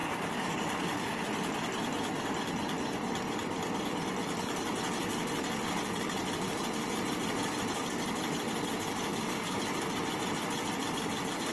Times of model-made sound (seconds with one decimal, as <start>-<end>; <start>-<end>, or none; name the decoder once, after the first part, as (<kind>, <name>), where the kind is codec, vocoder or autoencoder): 0.0-1.2 (codec, DAC); 9.1-9.6